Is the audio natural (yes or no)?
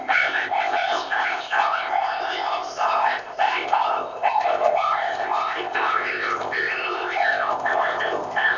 no